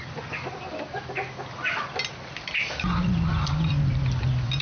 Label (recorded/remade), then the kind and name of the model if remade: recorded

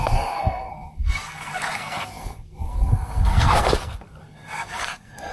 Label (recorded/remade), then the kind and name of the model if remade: remade, codec, SNAC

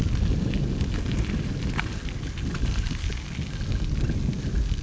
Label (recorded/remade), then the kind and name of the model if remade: recorded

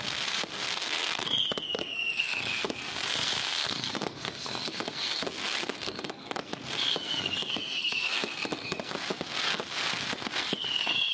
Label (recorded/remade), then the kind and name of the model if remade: remade, codec, SNAC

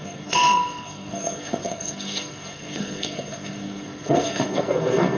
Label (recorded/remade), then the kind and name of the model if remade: remade, codec, SNAC